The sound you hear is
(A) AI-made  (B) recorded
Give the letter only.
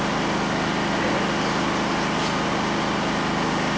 B